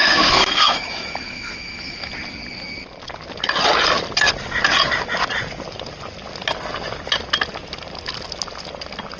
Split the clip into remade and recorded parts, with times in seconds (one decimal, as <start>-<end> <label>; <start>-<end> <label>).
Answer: 0.0-2.1 remade; 2.1-9.2 recorded